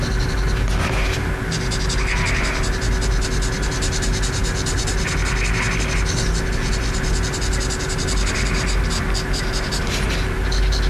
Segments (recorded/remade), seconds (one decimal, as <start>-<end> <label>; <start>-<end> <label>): 0.0-10.9 recorded

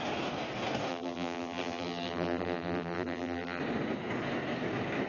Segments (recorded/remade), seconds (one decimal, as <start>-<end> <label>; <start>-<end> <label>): 0.0-0.9 recorded; 0.9-3.6 remade; 3.6-5.1 recorded

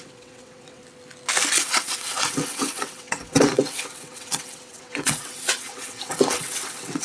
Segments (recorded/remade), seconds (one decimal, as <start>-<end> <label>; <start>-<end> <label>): 0.0-0.8 remade; 0.8-1.6 recorded; 1.6-7.0 remade

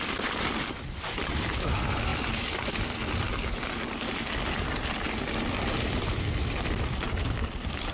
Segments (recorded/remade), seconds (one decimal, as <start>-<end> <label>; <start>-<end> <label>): 0.0-2.1 remade; 2.1-6.8 recorded; 6.8-7.9 remade